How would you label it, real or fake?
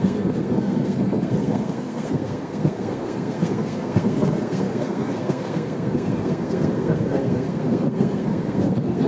fake